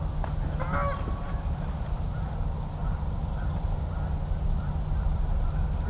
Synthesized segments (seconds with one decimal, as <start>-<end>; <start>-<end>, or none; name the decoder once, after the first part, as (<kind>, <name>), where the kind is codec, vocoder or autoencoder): none